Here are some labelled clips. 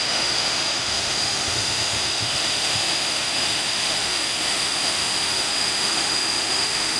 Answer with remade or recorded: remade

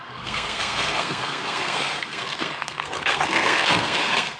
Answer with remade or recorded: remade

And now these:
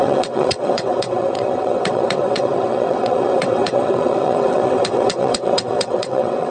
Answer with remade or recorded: remade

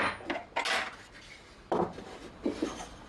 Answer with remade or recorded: recorded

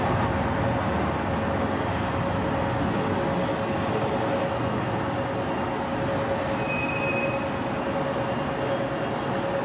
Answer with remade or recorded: recorded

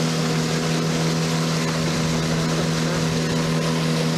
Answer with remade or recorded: recorded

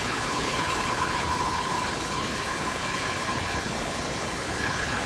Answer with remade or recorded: remade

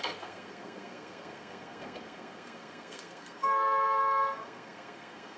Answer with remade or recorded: remade